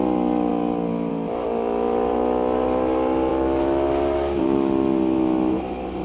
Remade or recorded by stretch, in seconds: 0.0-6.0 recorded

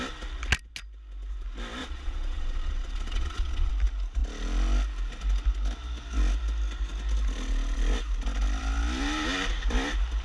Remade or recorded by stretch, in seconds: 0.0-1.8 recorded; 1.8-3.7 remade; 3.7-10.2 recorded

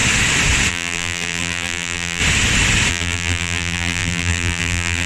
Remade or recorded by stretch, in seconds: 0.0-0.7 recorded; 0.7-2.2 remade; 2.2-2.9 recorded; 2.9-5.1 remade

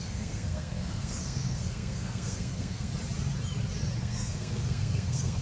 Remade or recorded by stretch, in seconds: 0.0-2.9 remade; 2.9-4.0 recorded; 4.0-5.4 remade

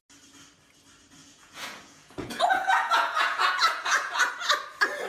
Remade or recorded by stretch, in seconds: 0.0-1.2 recorded; 1.2-4.3 remade; 4.3-5.1 recorded

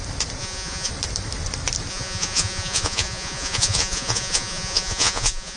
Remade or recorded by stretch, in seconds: 0.0-0.4 recorded; 0.4-0.9 remade; 0.9-1.9 recorded; 1.9-5.6 remade